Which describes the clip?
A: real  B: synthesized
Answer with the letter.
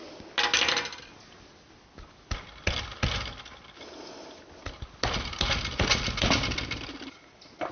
A